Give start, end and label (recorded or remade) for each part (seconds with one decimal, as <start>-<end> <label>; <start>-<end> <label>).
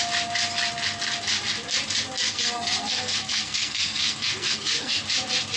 0.0-2.2 recorded; 2.2-5.0 remade; 5.0-5.6 recorded